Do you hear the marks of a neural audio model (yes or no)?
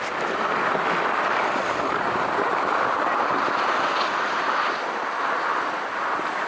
yes